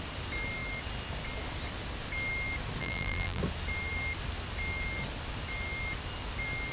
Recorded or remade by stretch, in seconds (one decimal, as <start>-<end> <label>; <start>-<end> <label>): 0.0-2.8 recorded; 2.8-3.4 remade; 3.4-6.7 recorded